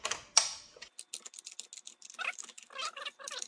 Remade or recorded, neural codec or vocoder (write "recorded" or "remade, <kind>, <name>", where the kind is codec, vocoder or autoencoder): recorded